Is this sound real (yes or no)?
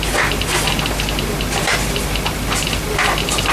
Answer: yes